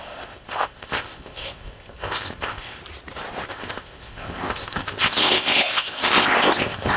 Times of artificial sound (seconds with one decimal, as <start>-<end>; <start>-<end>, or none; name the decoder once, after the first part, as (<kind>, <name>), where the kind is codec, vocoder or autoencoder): 0.0-2.8 (codec, ZipCodec); 3.5-7.0